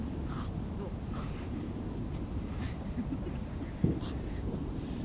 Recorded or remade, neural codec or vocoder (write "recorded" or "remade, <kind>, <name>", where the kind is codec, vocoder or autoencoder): remade, vocoder, BigVGAN v2